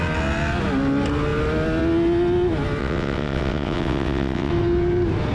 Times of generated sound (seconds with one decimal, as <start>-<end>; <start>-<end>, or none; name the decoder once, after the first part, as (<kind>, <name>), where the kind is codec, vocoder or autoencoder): 2.8-4.5 (vocoder, WaveNeXt)